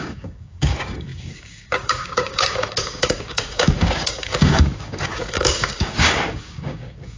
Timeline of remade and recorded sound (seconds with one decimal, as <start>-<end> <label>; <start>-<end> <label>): 0.0-7.2 remade